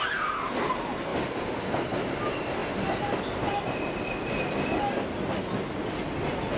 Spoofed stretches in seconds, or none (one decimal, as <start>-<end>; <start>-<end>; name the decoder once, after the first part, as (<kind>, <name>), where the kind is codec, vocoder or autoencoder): 1.1-1.9 (vocoder, BigVGAN v2)

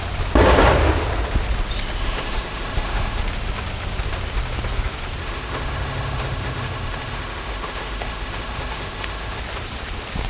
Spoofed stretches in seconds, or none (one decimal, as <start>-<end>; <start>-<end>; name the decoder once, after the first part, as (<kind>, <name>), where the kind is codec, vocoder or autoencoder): 2.0-3.2 (autoencoder, DAC-VAE); 5.2-9.4

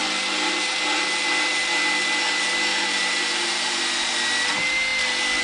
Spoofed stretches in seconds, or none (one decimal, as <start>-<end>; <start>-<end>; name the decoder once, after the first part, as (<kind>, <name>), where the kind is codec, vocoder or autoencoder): 2.7-3.8 (vocoder, BigVGAN v2)

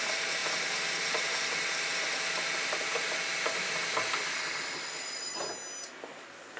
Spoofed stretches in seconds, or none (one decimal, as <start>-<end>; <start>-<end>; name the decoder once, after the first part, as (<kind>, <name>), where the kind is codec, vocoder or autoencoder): none